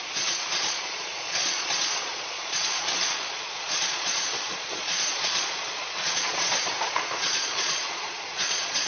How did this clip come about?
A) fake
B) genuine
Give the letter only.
A